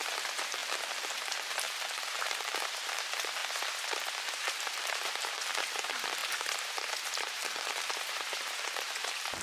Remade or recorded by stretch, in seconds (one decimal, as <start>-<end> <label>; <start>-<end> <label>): 0.0-3.4 remade; 3.4-4.2 recorded; 4.2-9.4 remade